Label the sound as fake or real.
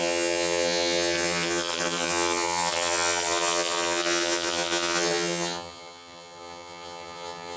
fake